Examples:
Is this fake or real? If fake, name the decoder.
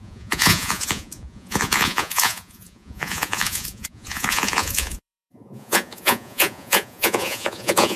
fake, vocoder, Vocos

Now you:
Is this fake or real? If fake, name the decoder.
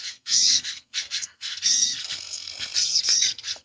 fake, codec, SNAC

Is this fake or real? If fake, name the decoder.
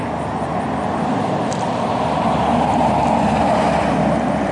real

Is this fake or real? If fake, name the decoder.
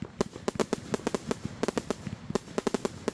real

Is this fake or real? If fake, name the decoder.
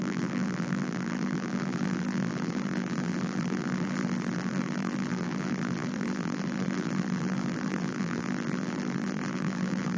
fake, vocoder, BigVGAN v2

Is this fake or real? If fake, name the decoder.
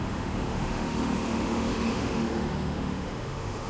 fake, autoencoder, DAC-VAE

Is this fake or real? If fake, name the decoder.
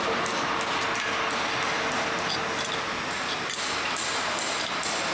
real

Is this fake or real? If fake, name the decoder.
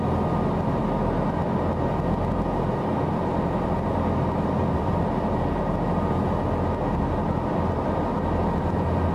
real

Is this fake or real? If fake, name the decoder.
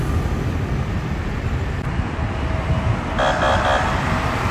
real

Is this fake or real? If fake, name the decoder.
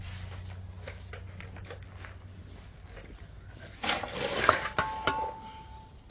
real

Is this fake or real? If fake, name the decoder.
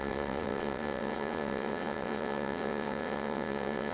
fake, vocoder, WaveNeXt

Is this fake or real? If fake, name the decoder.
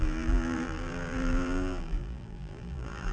fake, vocoder, BigVGAN v2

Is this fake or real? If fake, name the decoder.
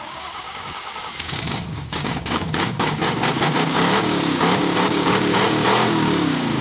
fake, codec, DAC